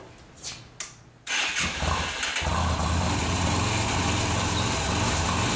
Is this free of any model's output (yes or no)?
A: yes